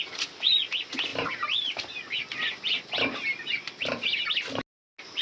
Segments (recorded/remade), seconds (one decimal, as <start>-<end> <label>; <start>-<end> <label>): 0.0-5.2 recorded